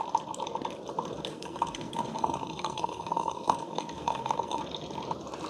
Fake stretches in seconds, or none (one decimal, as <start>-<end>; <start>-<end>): 1.3-4.6